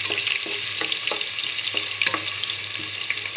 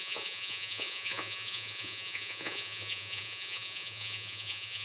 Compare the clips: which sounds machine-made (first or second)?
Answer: second